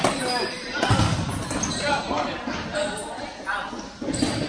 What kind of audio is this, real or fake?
real